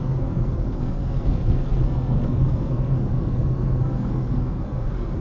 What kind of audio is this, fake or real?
fake